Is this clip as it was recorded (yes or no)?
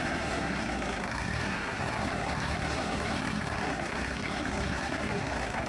no